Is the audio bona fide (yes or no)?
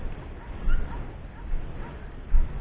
yes